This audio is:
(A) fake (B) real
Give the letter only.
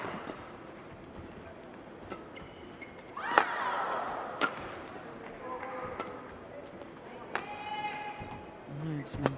B